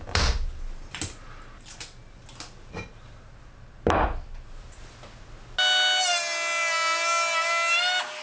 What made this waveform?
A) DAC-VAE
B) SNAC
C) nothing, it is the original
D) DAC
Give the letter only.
C